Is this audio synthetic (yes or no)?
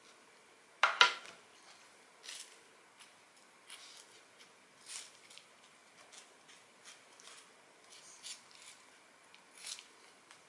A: no